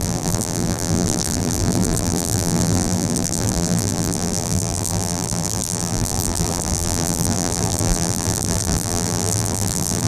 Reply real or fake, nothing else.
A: fake